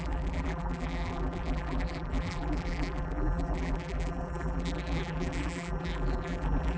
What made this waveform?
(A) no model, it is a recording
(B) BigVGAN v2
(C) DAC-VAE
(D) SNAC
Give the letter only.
B